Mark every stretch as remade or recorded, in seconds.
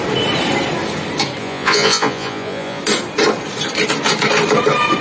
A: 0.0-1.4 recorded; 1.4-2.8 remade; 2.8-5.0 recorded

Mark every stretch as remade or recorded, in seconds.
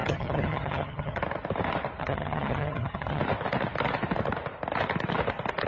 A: 0.0-1.2 remade; 1.2-2.0 recorded; 2.0-3.2 remade; 3.2-5.7 recorded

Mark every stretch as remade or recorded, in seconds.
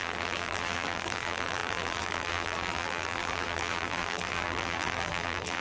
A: 0.0-5.6 remade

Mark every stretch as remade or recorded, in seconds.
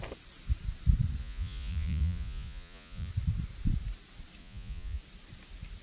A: 0.0-1.2 recorded; 1.2-3.1 remade; 3.1-4.4 recorded; 4.4-5.0 remade; 5.0-5.8 recorded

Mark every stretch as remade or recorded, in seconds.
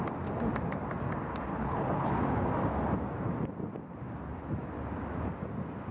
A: 0.0-1.5 recorded; 1.5-2.1 remade; 2.1-5.9 recorded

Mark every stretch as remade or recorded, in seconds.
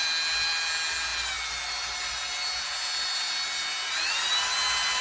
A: 0.0-5.0 recorded